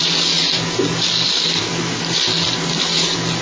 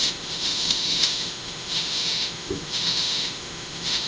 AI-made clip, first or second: second